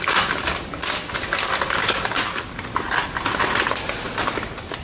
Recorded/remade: remade